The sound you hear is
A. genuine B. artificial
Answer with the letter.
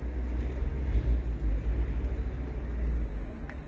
A